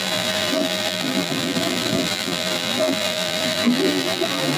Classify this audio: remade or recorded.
remade